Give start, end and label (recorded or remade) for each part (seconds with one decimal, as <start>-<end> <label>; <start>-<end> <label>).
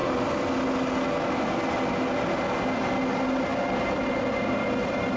0.0-3.5 recorded; 3.5-4.2 remade; 4.2-5.2 recorded